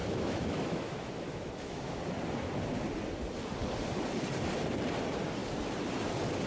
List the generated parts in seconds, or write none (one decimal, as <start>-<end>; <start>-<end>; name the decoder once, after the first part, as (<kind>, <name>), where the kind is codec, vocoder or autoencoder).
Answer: 0.0-2.0 (autoencoder, DAC-VAE)